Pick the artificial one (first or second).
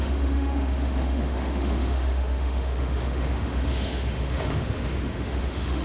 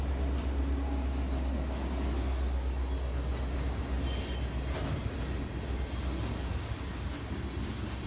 first